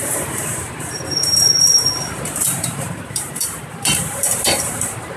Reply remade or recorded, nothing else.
remade